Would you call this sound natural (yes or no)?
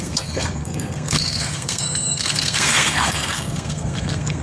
no